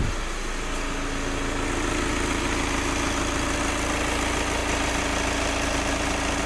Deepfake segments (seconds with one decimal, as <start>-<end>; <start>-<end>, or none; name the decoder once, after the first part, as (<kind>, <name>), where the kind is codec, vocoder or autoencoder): none